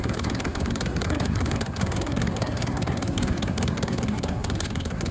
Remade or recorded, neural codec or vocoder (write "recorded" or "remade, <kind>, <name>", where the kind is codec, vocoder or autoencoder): remade, codec, SNAC